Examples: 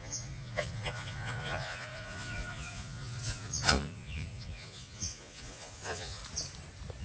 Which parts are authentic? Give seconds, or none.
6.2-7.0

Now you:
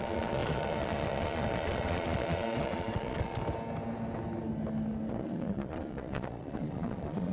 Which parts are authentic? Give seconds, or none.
3.4-5.1